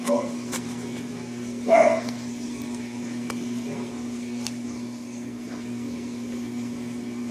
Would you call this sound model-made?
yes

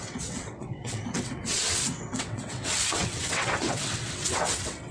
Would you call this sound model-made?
yes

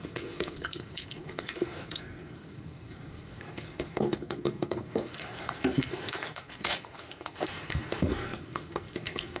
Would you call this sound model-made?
yes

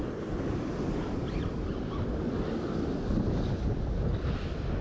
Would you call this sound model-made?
no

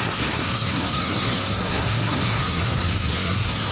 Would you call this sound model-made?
yes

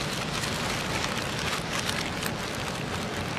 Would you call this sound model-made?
no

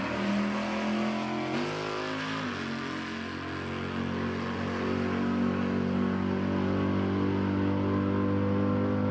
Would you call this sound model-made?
no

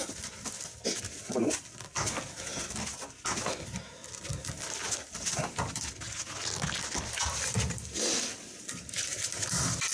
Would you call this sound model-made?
no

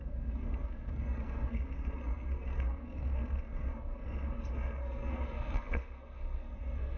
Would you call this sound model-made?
yes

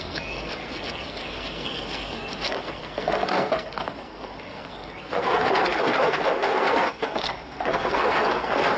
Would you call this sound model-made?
yes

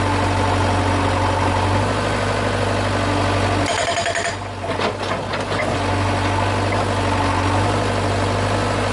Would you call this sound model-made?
no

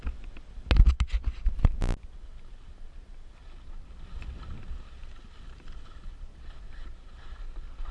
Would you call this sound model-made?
no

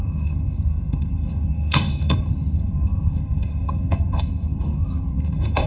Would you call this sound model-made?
yes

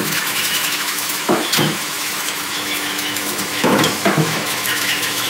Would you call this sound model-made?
yes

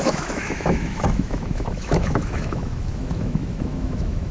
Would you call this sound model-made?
yes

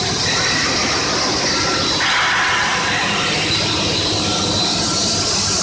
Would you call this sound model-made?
no